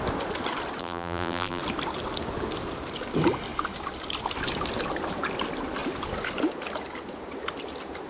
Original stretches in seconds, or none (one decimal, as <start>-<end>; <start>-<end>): 0.0-0.8; 1.6-8.1